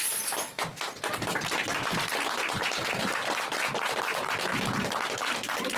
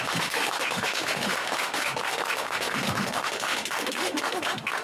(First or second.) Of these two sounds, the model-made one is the second